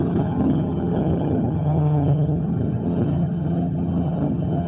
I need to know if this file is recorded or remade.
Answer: remade